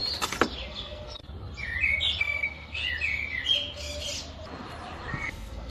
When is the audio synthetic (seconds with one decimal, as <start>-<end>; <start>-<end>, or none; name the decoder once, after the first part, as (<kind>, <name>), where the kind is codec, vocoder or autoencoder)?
0.7-1.2 (codec, SNAC); 2.2-2.8; 5.1-5.7